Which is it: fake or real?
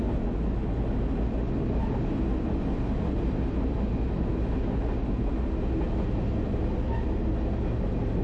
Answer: real